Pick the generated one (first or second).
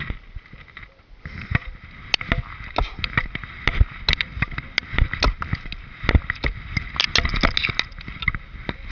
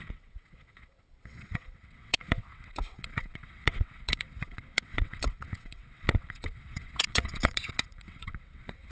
second